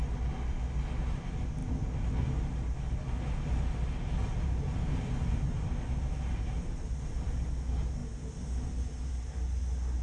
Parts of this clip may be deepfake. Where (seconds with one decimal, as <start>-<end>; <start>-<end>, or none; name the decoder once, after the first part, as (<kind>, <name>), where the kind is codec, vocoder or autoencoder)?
none